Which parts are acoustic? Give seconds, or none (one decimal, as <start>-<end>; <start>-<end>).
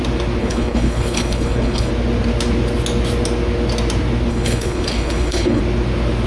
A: 0.0-0.4; 1.9-4.3; 5.6-6.3